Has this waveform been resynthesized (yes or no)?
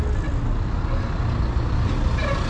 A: no